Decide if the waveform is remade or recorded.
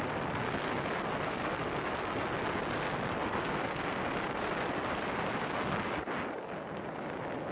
recorded